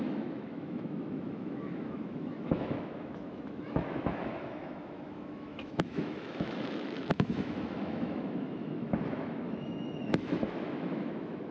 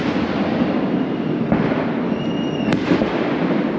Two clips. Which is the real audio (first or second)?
second